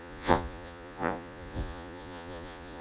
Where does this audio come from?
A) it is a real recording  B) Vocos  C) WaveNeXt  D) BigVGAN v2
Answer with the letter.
B